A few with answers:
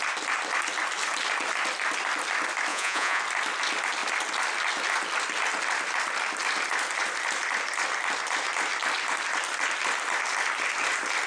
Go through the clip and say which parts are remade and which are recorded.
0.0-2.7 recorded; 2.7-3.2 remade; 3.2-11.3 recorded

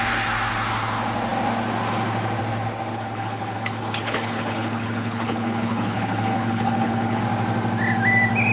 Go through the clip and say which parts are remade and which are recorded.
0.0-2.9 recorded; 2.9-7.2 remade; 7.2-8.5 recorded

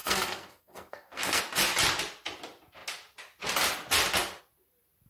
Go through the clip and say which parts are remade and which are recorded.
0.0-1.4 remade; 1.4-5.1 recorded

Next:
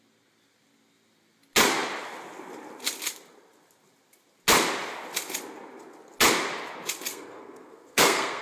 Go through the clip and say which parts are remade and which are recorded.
0.0-7.1 recorded; 7.1-8.4 remade

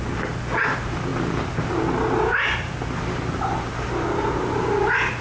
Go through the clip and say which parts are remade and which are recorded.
0.0-5.2 recorded

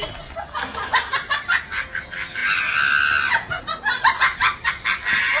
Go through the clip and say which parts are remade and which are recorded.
0.0-5.4 recorded

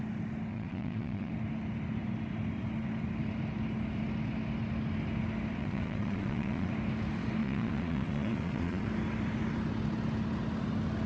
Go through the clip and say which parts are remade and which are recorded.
0.0-0.5 recorded; 0.5-1.3 remade; 1.3-5.6 recorded; 5.6-6.7 remade; 6.7-7.4 recorded; 7.4-8.9 remade; 8.9-11.1 recorded

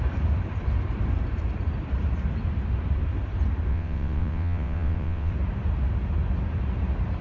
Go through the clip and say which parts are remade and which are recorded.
0.0-3.7 recorded; 3.7-5.3 remade; 5.3-7.2 recorded